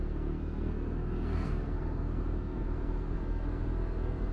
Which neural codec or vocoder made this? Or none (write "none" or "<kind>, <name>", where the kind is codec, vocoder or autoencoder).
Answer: codec, SNAC